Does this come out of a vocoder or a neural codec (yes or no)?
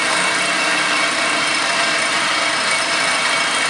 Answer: yes